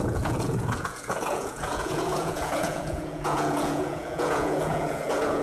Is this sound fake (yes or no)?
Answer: yes